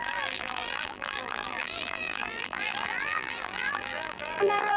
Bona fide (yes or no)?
no